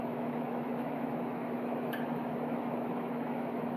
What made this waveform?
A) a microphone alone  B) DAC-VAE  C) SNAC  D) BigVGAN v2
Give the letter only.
B